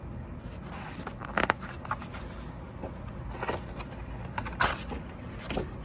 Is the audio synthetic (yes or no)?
no